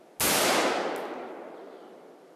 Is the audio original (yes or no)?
yes